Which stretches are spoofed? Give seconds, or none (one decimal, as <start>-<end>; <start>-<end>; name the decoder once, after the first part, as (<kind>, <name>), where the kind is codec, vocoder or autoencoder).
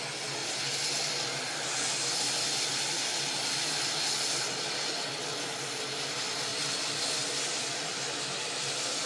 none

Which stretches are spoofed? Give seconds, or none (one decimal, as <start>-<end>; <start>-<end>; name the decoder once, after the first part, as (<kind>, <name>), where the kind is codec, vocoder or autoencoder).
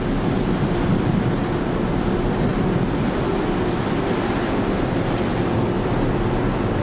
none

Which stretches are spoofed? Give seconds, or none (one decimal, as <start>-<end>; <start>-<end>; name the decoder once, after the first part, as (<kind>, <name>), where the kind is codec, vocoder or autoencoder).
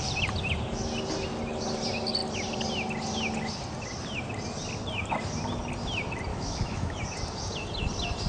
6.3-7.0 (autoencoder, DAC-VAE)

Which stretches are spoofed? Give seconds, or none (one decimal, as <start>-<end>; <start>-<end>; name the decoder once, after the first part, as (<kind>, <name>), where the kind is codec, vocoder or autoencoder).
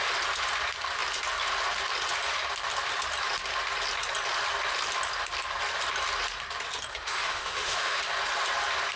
6.9-8.0 (autoencoder, DAC-VAE)